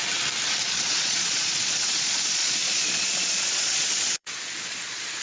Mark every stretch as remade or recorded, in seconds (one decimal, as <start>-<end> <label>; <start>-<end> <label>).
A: 0.0-0.6 recorded; 0.6-5.2 remade